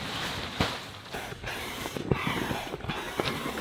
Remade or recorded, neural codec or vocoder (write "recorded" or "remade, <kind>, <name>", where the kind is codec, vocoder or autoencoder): remade, vocoder, BigVGAN v2